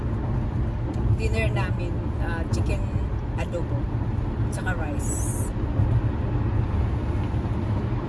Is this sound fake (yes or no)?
no